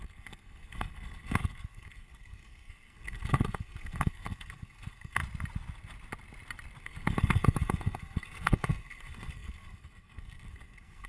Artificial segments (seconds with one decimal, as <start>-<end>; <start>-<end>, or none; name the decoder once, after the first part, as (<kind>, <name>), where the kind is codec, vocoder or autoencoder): 0.0-5.2 (codec, SNAC); 6.8-11.1